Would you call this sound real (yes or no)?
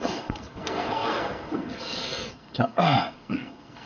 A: no